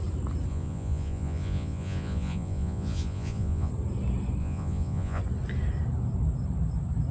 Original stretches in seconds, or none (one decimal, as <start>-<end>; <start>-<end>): 0.0-0.5; 3.7-4.4; 5.2-7.1